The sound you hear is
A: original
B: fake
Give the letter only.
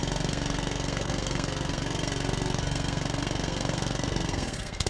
B